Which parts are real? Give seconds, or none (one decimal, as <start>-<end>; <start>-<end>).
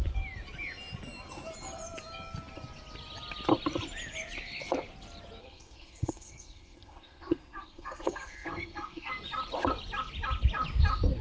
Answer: 0.0-5.4; 9.1-11.2